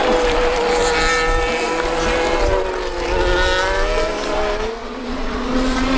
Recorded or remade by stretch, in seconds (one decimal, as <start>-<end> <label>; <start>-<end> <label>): 0.0-4.8 recorded; 4.8-6.0 remade